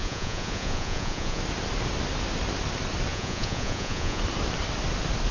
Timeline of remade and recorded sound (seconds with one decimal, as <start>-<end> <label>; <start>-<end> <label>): 0.0-1.4 remade; 1.4-3.1 recorded; 3.1-4.2 remade; 4.2-5.3 recorded